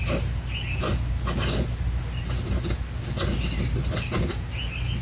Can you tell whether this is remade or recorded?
recorded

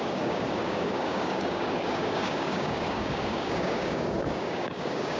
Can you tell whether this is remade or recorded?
remade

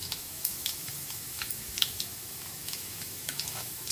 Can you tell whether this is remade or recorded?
remade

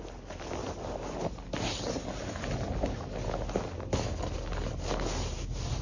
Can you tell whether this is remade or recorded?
recorded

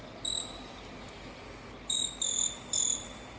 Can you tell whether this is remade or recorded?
recorded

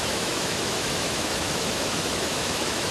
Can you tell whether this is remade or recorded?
remade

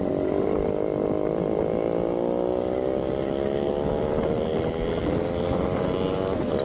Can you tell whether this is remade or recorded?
recorded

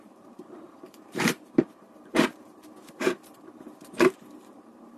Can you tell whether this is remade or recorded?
remade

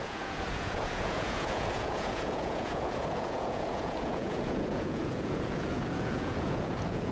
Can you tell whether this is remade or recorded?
remade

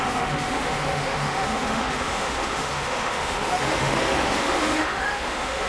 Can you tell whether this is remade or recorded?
remade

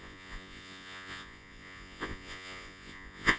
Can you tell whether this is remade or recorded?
remade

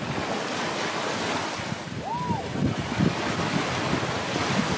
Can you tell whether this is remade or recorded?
recorded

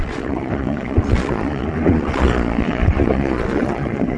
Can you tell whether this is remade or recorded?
remade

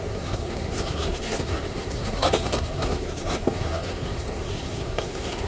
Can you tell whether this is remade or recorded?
remade